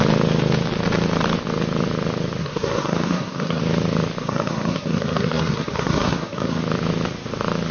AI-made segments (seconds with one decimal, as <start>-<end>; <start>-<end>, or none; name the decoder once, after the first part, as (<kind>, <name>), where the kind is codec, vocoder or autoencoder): 2.4-3.6 (codec, SNAC); 4.2-6.6